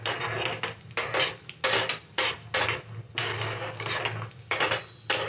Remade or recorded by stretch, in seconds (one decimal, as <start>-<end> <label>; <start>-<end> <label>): 0.0-3.2 recorded; 3.2-4.0 remade; 4.0-5.3 recorded